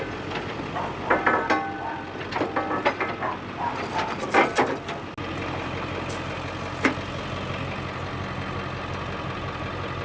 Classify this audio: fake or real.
real